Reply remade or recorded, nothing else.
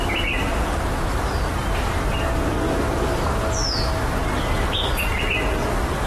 recorded